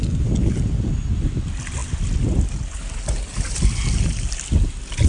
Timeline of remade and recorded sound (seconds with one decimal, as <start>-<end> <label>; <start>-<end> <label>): 0.0-5.1 recorded